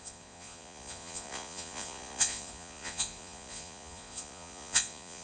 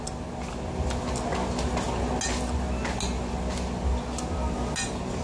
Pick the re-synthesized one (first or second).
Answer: first